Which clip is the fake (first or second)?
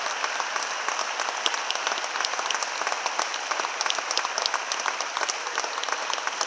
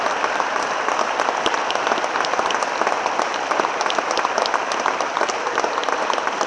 second